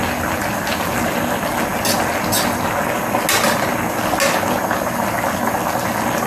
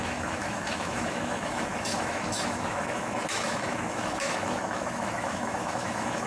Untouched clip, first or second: first